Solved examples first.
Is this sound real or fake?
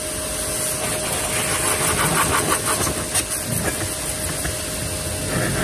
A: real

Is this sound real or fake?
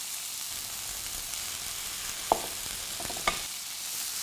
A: real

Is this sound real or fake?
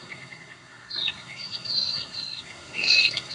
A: fake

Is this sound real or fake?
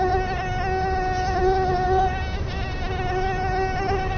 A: real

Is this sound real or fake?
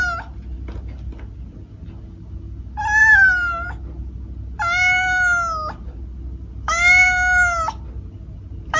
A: real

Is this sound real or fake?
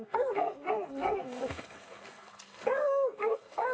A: fake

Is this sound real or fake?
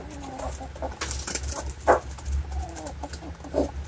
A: real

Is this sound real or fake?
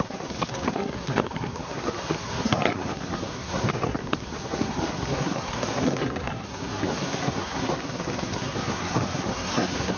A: fake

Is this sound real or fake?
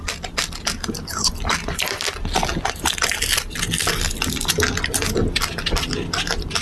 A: real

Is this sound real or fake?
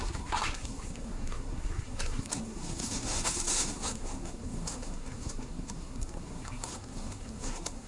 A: fake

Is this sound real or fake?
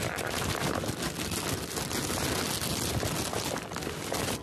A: real